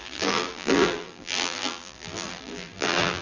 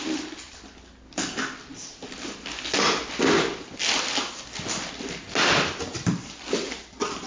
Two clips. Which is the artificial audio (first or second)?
first